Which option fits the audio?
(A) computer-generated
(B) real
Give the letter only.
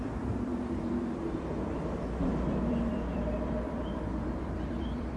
A